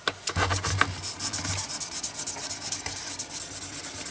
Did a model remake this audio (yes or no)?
no